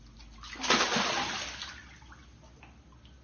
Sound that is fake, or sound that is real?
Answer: real